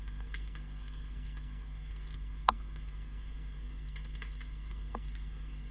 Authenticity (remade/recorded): remade